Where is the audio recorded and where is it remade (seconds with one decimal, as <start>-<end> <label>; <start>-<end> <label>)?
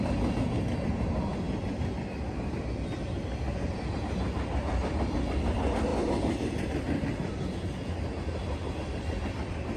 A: 0.0-9.8 recorded